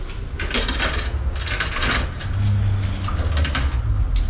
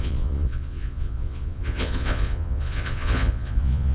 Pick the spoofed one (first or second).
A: second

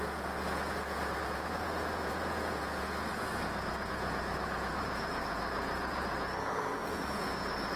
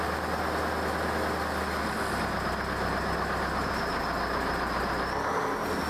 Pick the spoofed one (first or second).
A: first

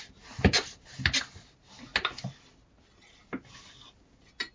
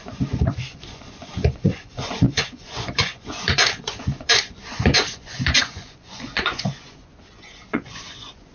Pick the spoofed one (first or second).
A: second